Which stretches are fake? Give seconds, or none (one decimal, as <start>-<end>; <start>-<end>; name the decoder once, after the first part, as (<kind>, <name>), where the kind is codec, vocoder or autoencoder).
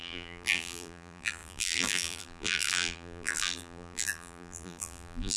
0.0-5.4 (vocoder, BigVGAN v2)